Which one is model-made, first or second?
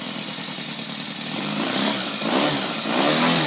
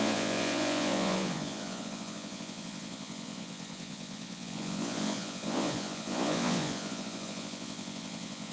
second